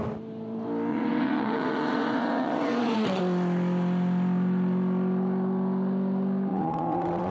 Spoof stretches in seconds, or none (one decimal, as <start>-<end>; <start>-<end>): 0.9-3.2; 6.5-7.3